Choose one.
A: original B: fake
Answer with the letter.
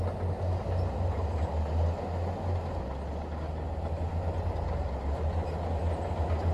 A